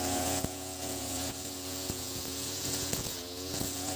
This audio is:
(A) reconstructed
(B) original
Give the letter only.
A